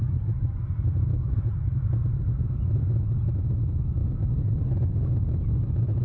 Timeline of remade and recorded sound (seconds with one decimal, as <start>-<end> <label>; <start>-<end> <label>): 0.0-6.0 recorded